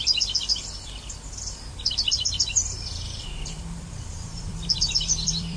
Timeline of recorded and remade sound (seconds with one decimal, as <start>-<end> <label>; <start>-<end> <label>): 0.0-5.6 remade